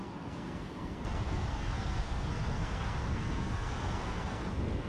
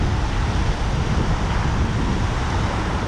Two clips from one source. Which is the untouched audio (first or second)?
second